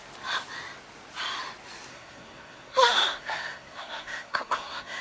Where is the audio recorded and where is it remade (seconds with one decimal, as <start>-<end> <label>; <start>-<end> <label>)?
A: 0.0-1.9 recorded; 1.9-5.0 remade